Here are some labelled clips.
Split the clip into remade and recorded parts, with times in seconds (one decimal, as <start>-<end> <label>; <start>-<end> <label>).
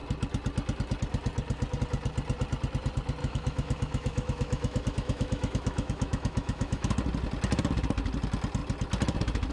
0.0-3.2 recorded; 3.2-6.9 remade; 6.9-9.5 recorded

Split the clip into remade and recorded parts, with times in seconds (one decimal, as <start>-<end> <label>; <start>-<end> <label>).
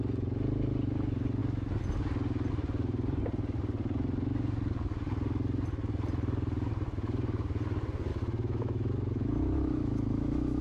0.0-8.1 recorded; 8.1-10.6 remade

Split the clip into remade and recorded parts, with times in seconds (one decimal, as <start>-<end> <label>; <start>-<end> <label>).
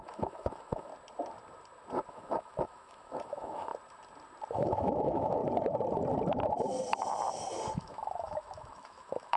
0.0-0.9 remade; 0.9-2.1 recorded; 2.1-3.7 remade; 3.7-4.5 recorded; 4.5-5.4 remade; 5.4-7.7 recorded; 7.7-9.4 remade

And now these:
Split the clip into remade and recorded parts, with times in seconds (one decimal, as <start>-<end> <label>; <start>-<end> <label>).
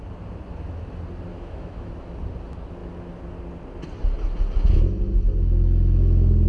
0.0-1.3 recorded; 1.3-1.9 remade; 1.9-6.5 recorded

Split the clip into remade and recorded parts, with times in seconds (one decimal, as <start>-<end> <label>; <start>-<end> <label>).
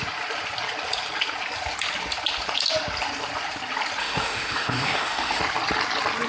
0.0-4.0 recorded; 4.0-5.4 remade; 5.4-6.3 recorded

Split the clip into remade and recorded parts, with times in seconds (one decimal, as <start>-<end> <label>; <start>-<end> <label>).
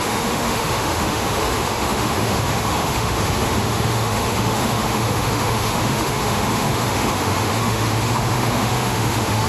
0.0-9.5 remade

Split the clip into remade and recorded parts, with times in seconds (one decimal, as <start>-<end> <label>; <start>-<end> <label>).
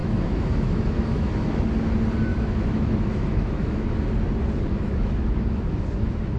0.0-1.6 remade; 1.6-2.3 recorded; 2.3-4.0 remade; 4.0-4.7 recorded; 4.7-5.8 remade; 5.8-6.4 recorded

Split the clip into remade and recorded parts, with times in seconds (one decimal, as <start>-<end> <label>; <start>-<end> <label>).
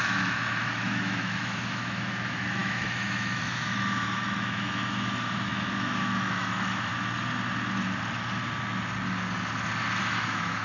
0.0-6.9 remade; 6.9-10.0 recorded; 10.0-10.6 remade